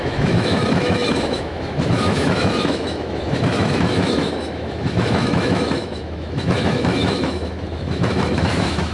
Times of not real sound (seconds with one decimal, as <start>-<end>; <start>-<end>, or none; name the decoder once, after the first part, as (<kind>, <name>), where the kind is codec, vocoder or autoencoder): 0.0-8.9 (autoencoder, DAC-VAE)